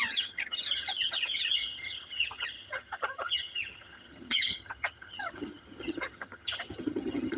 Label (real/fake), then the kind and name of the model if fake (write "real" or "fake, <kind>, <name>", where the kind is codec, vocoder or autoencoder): fake, vocoder, HiFi-GAN